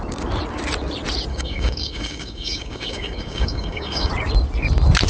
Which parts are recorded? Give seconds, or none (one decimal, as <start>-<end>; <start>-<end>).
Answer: 0.0-1.3; 4.1-5.1